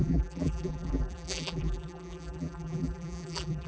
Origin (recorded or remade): remade